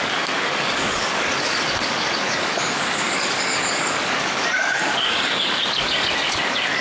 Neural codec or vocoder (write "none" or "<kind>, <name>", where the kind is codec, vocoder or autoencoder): codec, DAC